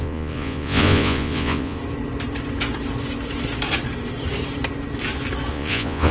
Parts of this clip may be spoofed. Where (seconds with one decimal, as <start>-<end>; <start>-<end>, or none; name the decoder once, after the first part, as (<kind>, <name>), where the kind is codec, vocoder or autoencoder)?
0.0-1.8 (vocoder, Vocos); 5.5-6.1